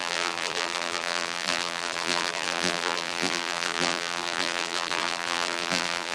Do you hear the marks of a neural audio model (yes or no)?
yes